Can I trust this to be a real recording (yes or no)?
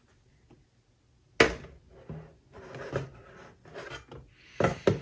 yes